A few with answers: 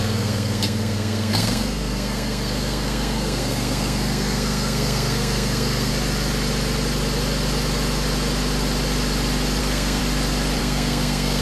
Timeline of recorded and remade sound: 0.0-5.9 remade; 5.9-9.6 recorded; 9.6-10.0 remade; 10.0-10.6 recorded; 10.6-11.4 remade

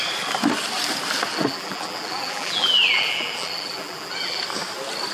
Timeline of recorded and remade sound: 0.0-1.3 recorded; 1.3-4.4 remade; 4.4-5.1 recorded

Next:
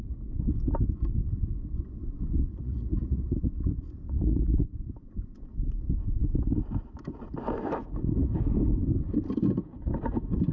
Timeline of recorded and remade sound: 0.0-2.5 recorded; 2.5-4.8 remade; 4.8-10.5 recorded